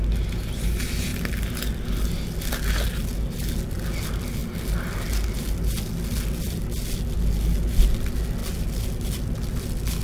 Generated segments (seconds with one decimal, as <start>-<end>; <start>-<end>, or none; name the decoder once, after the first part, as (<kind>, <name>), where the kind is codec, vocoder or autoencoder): none